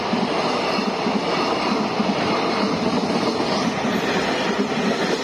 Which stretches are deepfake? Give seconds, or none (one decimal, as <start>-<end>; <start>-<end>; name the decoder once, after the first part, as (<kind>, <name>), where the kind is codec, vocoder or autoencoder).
none